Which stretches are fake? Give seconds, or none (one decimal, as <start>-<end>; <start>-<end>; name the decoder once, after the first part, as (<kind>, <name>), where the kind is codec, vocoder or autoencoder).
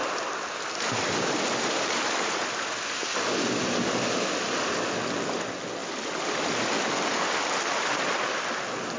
0.0-4.0 (vocoder, BigVGAN v2); 5.8-8.4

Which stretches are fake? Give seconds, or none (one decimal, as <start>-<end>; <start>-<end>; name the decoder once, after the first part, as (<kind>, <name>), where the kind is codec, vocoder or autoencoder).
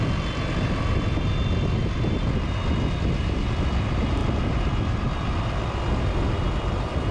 none